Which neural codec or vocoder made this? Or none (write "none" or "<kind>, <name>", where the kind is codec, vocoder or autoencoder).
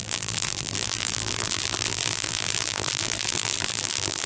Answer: vocoder, BigVGAN v2